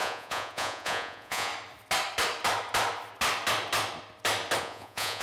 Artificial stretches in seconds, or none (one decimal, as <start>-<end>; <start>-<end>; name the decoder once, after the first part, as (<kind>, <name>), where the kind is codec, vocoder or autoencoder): 0.0-1.5 (vocoder, Vocos); 4.6-5.2